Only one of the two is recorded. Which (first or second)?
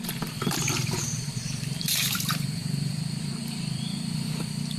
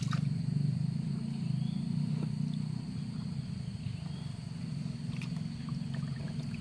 second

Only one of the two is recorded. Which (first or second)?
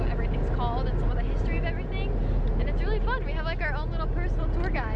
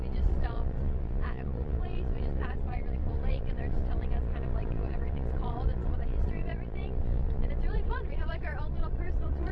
first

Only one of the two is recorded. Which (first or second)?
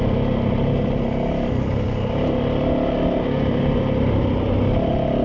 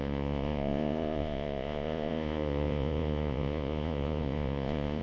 first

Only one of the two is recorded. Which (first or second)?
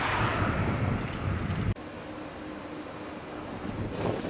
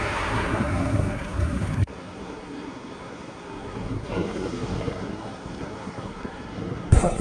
first